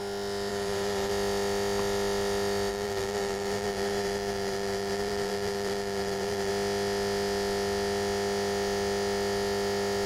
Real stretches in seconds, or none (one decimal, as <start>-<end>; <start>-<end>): 0.0-0.5; 1.1-2.7; 6.5-10.1